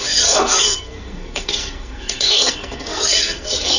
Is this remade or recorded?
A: remade